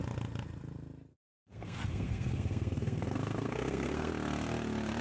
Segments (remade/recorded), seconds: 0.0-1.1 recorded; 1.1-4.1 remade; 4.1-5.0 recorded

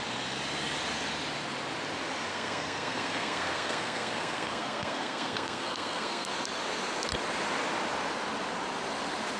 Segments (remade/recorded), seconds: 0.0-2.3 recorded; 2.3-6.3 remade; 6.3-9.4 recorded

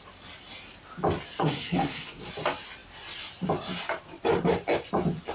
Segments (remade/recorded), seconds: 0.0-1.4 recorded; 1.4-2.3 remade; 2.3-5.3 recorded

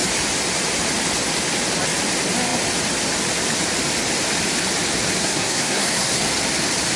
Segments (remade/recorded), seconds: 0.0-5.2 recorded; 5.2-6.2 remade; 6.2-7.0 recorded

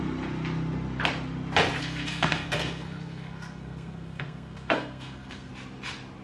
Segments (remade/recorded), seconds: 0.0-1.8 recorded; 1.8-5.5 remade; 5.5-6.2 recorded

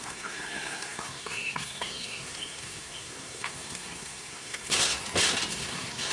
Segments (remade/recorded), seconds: 0.0-5.0 remade; 5.0-5.5 recorded; 5.5-6.1 remade